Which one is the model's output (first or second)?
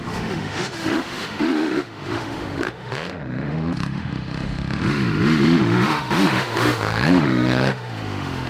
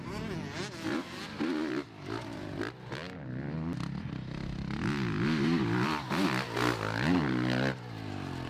first